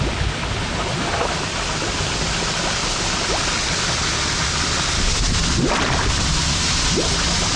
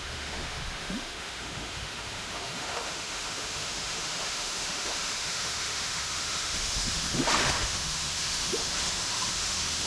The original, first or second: first